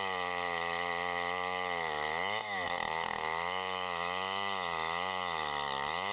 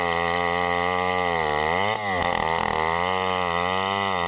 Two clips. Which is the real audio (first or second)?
second